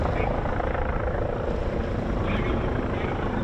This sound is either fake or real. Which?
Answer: real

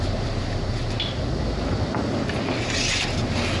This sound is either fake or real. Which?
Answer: real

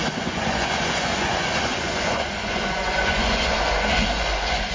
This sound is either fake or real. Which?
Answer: fake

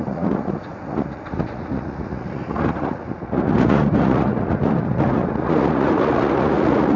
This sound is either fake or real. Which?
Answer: fake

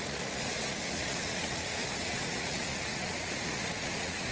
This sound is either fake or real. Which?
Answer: fake